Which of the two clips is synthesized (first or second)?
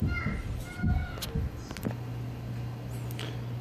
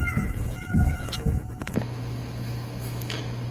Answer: second